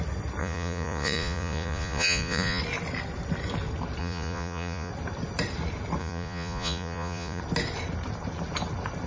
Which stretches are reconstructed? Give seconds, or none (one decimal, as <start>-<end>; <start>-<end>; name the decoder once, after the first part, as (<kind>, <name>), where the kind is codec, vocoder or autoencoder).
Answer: 0.4-2.6 (vocoder, Vocos); 4.0-4.9; 6.0-7.4